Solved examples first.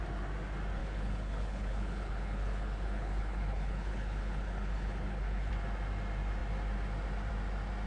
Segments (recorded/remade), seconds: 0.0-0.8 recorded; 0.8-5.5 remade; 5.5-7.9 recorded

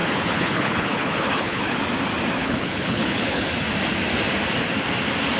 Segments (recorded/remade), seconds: 0.0-1.8 remade; 1.8-2.4 recorded; 2.4-3.4 remade; 3.4-5.4 recorded

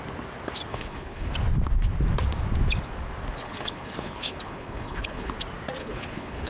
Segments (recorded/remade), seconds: 0.0-0.7 recorded; 0.7-1.3 remade; 1.3-3.4 recorded; 3.4-5.3 remade; 5.3-5.8 recorded; 5.8-6.5 remade

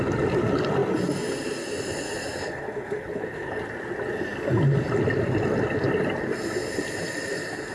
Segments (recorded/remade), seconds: 0.0-2.4 recorded; 2.4-3.6 remade; 3.6-7.7 recorded

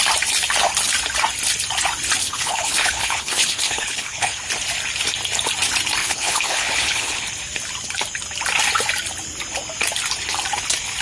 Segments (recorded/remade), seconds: 0.0-2.2 recorded; 2.2-4.4 remade; 4.4-6.0 recorded; 6.0-7.2 remade; 7.2-11.0 recorded

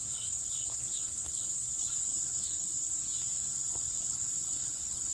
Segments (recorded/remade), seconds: 0.0-3.1 remade; 3.1-4.0 recorded; 4.0-5.1 remade